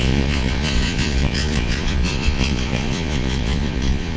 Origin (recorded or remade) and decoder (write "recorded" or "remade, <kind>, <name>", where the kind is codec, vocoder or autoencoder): remade, vocoder, Vocos